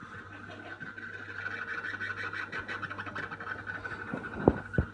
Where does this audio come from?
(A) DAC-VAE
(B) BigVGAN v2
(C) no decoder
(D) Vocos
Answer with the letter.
C